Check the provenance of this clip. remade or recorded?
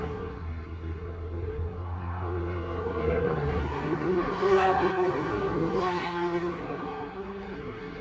remade